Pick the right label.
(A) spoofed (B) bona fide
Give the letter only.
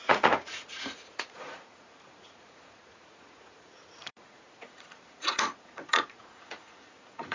A